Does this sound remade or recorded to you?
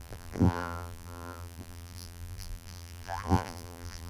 remade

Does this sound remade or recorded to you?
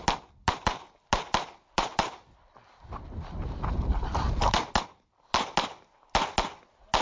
recorded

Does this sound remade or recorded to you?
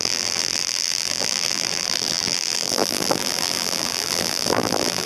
remade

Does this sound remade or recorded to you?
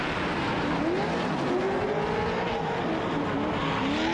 recorded